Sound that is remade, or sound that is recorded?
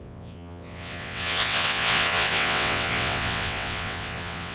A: remade